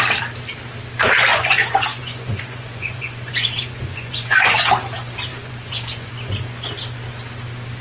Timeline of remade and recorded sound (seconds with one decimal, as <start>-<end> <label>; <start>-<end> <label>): 0.0-1.3 recorded; 1.3-4.7 remade; 4.7-5.3 recorded; 5.3-6.8 remade; 6.8-7.8 recorded